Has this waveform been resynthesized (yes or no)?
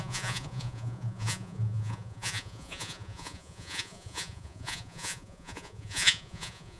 yes